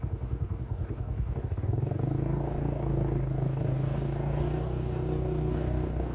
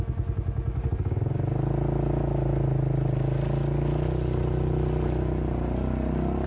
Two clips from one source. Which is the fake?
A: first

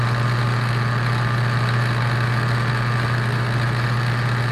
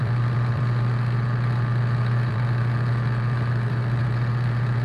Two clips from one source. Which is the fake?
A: second